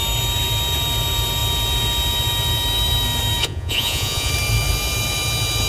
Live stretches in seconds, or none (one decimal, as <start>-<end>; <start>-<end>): 0.0-3.4; 4.3-5.7